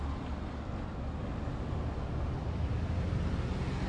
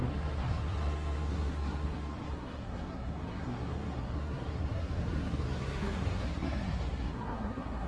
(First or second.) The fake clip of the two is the second